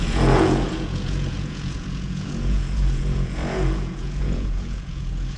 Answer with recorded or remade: remade